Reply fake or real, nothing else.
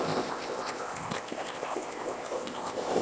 fake